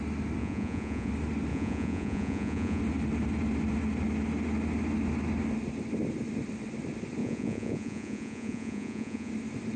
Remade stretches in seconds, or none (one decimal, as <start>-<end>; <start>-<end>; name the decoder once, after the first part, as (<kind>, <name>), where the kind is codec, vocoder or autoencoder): 0.4-1.1 (vocoder, Vocos); 1.5-2.8; 7.2-9.3